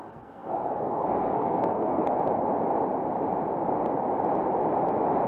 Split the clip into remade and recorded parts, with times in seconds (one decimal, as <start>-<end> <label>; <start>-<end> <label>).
0.0-2.0 remade; 2.0-5.3 recorded

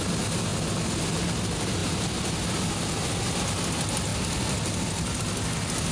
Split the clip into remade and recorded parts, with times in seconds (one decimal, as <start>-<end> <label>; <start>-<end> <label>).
0.0-5.9 recorded

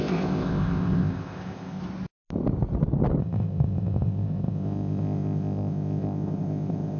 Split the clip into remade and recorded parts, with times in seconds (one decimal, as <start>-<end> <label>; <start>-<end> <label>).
0.0-1.8 remade; 1.8-3.2 recorded; 3.2-7.0 remade